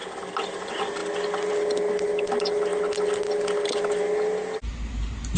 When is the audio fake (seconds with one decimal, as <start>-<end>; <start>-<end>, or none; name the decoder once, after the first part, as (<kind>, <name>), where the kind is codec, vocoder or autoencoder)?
none